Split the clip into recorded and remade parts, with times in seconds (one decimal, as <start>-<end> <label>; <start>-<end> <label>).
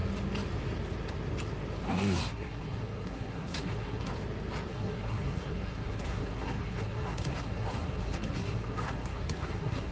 0.0-1.9 recorded; 1.9-4.1 remade; 4.1-4.7 recorded; 4.7-9.9 remade